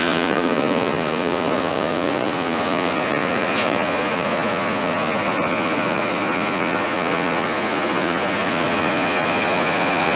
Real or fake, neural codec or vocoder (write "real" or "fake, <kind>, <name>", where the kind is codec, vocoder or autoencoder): fake, vocoder, Vocos